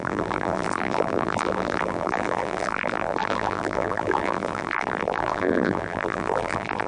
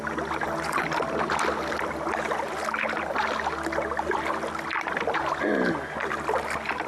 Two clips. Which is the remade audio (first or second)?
first